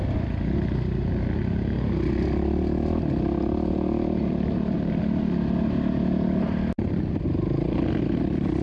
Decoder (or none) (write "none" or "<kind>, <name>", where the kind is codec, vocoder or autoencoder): none